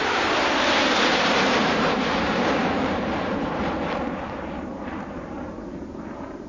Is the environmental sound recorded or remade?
remade